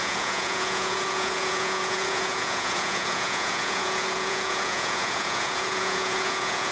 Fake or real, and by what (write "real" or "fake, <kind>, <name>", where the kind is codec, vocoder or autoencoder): fake, vocoder, Vocos